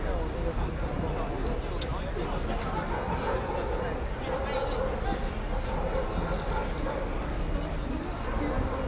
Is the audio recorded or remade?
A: recorded